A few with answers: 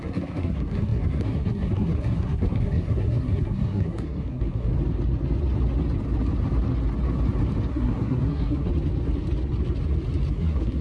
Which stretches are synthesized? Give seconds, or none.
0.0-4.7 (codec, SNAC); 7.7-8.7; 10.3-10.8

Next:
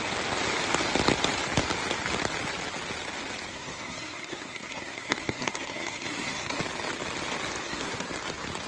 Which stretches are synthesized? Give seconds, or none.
3.5-6.6 (codec, SNAC); 7.6-8.1